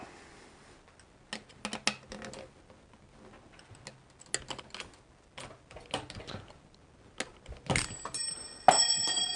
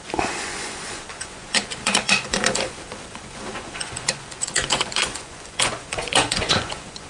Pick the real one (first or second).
first